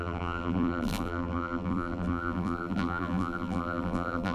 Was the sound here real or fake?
fake